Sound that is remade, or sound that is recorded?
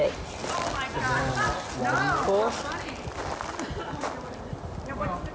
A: recorded